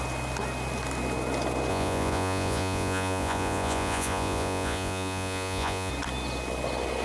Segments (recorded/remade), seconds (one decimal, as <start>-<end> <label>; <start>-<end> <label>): 0.0-1.7 recorded; 1.7-5.9 remade; 5.9-7.0 recorded